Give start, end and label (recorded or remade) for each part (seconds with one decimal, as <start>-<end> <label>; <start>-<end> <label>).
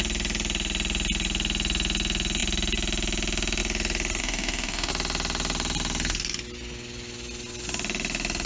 0.0-4.2 recorded; 4.2-4.9 remade; 4.9-8.5 recorded